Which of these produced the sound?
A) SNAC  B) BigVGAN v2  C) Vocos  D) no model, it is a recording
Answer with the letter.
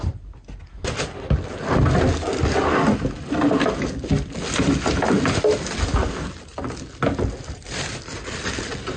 D